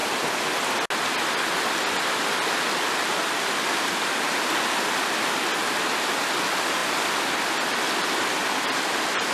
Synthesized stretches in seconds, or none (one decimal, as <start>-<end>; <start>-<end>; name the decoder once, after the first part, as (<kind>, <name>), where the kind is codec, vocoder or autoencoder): none